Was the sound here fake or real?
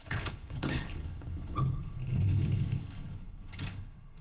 fake